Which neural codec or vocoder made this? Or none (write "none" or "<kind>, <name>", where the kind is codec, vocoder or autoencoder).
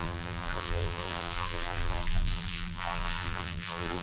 vocoder, BigVGAN v2